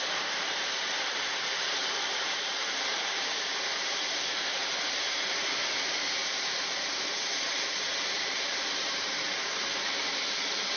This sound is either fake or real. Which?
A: fake